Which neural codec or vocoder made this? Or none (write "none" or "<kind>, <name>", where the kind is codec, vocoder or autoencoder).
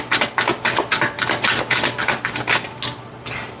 none